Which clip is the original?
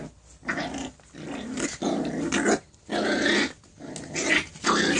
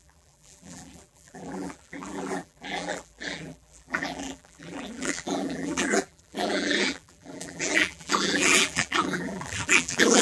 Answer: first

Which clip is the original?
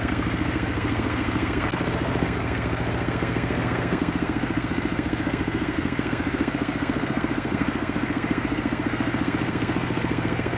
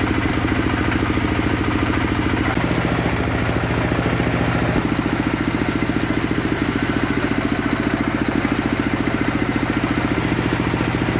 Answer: second